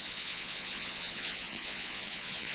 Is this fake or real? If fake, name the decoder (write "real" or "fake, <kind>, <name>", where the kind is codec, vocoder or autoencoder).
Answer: fake, vocoder, Vocos